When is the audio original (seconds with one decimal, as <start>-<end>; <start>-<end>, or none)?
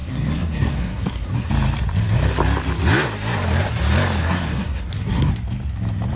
1.5-4.2; 5.3-6.2